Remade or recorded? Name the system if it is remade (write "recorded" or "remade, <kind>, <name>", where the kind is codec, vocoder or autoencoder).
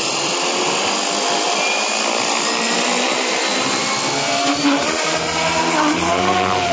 recorded